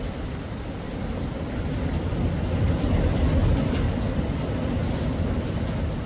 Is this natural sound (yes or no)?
yes